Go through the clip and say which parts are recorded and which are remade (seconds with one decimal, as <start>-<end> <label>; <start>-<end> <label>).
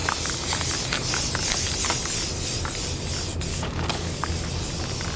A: 0.0-3.5 recorded; 3.5-4.3 remade; 4.3-5.2 recorded